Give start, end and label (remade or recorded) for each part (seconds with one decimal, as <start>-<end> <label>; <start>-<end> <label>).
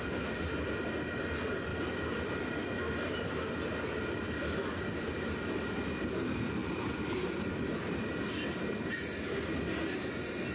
0.0-1.7 recorded; 1.7-2.3 remade; 2.3-6.6 recorded; 6.6-8.6 remade; 8.6-10.5 recorded